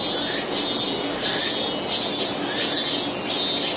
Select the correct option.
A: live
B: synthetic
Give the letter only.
A